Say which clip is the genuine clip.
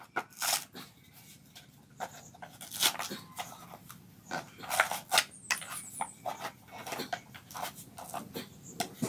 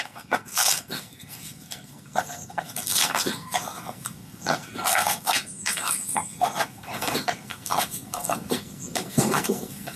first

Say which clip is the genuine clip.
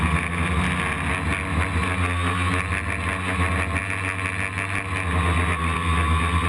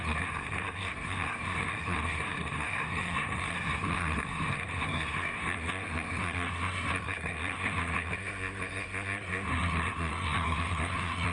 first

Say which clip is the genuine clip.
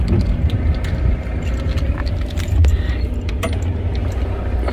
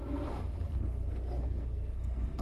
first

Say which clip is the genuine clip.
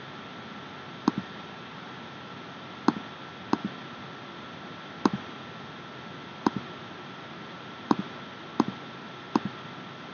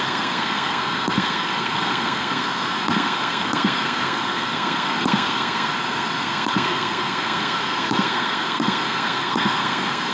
first